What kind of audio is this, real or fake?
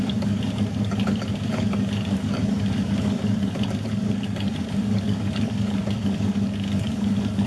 fake